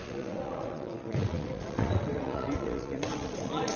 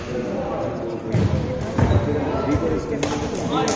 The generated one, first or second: first